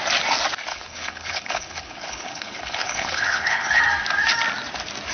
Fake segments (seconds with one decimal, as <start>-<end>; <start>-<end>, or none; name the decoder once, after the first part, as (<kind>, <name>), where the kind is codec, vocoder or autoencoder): 0.7-3.8 (codec, HILCodec)